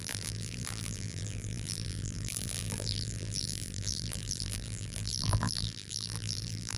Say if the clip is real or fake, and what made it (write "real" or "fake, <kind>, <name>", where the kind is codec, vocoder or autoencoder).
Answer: fake, vocoder, BigVGAN v2